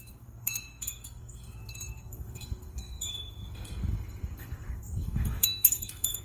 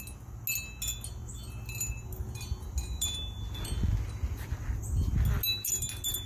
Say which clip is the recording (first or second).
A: second